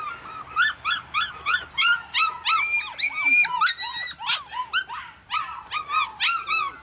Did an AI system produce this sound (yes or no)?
no